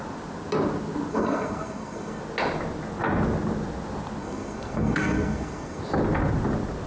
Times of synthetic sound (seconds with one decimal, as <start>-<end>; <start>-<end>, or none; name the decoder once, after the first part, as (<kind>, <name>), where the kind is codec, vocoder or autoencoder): 1.1-2.2 (codec, SNAC); 4.2-5.8